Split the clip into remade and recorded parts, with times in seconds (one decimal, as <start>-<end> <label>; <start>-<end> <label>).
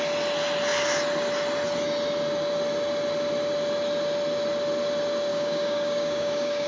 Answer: 0.0-5.3 recorded; 5.3-6.7 remade